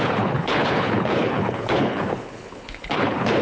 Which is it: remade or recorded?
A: remade